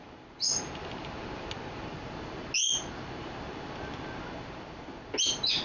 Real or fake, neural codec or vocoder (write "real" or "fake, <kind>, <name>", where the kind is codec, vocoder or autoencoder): real